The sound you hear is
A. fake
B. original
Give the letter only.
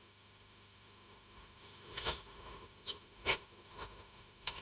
A